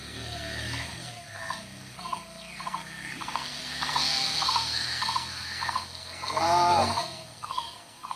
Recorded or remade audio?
remade